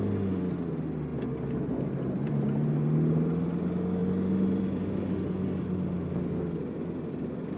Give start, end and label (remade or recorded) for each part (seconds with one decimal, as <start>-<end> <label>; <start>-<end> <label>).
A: 0.0-7.6 recorded